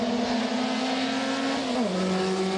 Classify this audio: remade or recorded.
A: recorded